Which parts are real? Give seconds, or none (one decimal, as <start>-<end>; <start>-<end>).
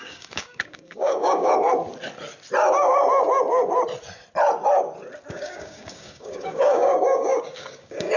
1.5-5.3